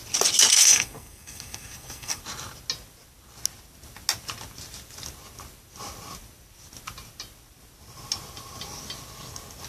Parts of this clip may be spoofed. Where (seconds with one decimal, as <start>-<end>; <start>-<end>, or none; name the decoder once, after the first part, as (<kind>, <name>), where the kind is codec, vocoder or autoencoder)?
0.5-2.2 (codec, SNAC)